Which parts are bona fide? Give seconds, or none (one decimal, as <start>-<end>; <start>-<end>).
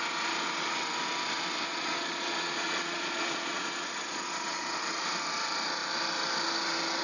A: 0.0-1.7; 4.8-7.0